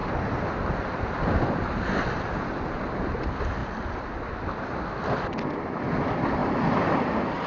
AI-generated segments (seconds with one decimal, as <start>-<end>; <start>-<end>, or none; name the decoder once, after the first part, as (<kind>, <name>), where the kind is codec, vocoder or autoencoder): none